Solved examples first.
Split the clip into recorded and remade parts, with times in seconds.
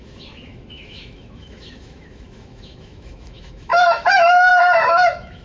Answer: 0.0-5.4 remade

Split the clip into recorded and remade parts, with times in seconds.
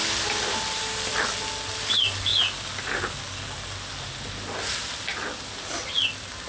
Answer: 0.0-6.5 recorded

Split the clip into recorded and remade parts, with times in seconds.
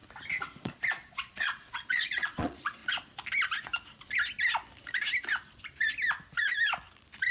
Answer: 0.0-0.6 recorded; 0.6-2.8 remade; 2.8-7.3 recorded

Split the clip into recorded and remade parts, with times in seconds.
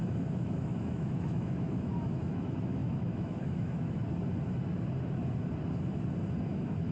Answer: 0.0-4.0 remade; 4.0-6.5 recorded; 6.5-6.9 remade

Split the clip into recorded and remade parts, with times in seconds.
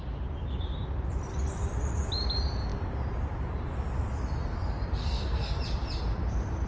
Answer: 0.0-5.0 recorded; 5.0-5.6 remade; 5.6-6.7 recorded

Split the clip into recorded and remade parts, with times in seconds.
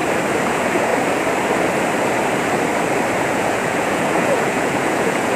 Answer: 0.0-0.5 recorded; 0.5-0.9 remade; 0.9-3.2 recorded; 3.2-5.4 remade